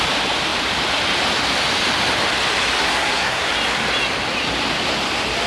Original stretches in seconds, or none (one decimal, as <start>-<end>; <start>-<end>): 0.0-2.8; 3.5-5.5